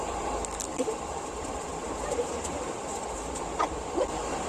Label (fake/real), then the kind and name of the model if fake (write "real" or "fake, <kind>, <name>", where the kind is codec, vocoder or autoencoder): fake, vocoder, BigVGAN v2